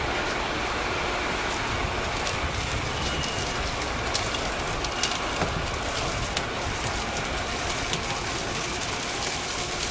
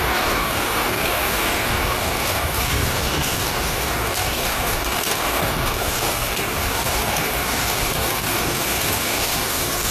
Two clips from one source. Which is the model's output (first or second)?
second